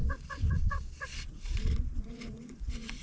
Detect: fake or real fake